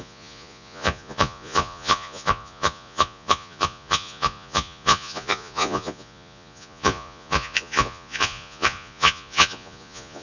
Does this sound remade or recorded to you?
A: remade